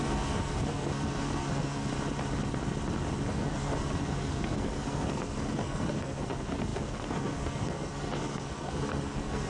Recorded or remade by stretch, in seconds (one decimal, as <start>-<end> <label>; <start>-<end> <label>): 0.0-1.9 remade; 1.9-3.3 recorded; 3.3-9.5 remade